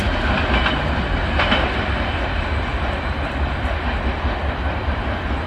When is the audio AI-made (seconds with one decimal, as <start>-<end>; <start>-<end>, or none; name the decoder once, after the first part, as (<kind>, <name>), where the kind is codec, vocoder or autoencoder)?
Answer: none